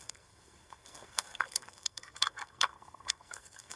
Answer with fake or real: fake